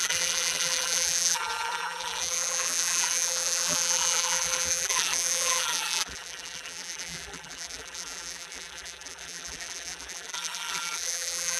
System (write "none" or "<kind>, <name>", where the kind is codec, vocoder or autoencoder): vocoder, BigVGAN v2